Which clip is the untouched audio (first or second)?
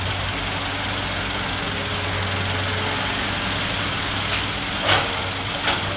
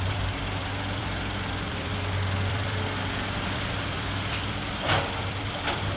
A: first